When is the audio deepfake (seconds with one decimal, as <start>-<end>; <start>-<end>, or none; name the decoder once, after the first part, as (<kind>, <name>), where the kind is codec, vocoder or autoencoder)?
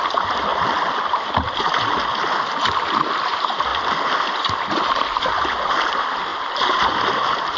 0.0-0.5 (vocoder, BigVGAN v2); 2.8-3.7; 4.8-7.6